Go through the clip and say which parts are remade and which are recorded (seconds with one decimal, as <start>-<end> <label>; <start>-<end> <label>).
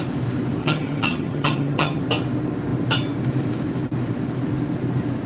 0.0-0.6 recorded; 0.6-2.0 remade; 2.0-5.3 recorded